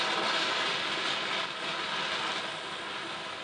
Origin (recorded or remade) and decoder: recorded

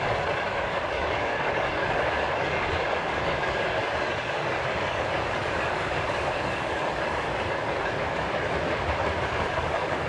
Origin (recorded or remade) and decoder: remade, codec, DAC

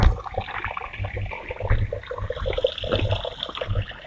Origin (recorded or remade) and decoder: recorded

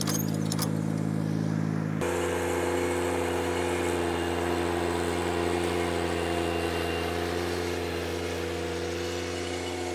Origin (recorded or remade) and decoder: recorded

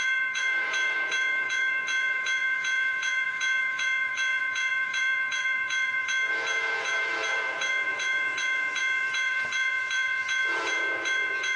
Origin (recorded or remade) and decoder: remade, vocoder, Vocos